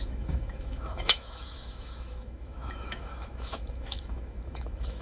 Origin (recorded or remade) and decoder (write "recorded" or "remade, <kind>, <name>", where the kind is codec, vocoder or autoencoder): remade, autoencoder, DAC-VAE